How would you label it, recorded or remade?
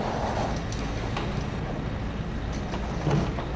recorded